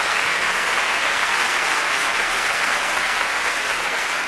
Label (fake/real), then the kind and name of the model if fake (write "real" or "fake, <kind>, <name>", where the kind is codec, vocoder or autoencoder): fake, codec, SNAC